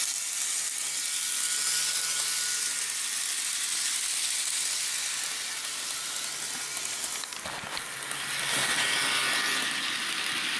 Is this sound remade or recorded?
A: recorded